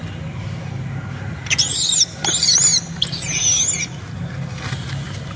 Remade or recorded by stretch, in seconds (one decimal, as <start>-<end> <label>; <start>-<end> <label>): 0.0-5.4 recorded